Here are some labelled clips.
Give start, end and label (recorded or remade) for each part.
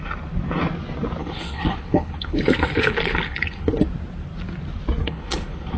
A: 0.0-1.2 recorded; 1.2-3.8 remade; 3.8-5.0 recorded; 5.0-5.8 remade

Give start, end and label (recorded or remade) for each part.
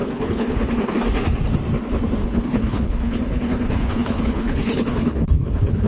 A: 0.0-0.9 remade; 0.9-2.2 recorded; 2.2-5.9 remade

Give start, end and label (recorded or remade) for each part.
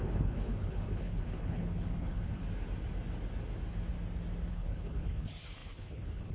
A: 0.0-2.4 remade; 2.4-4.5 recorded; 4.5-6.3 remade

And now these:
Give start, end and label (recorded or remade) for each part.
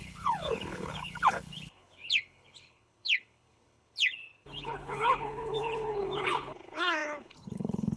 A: 0.0-8.0 remade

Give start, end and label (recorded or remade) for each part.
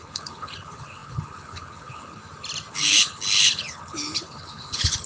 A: 0.0-2.2 remade; 2.2-2.7 recorded; 2.7-5.1 remade